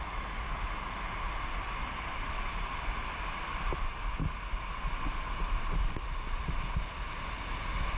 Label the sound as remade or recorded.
recorded